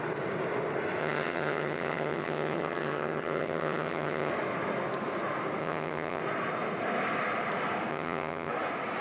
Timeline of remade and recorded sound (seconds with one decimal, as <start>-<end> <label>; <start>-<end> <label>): 0.0-1.0 recorded; 1.0-4.3 remade; 4.3-5.6 recorded; 5.6-6.2 remade; 6.2-7.9 recorded; 7.9-8.5 remade; 8.5-9.0 recorded